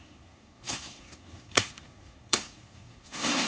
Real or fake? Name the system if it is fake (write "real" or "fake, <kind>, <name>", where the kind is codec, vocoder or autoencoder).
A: fake, codec, SNAC